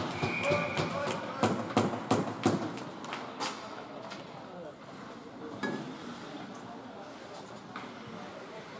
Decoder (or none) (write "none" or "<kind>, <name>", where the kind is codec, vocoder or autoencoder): none